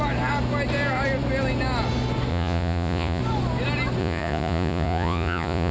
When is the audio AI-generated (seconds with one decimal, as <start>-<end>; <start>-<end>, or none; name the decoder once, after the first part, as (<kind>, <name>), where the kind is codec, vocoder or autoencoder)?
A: 2.3-3.2 (vocoder, Vocos); 4.0-5.7